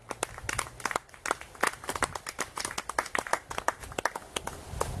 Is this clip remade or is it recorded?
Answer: recorded